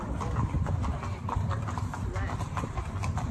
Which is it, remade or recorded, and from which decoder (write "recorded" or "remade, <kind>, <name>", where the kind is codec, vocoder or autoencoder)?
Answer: remade, vocoder, BigVGAN v2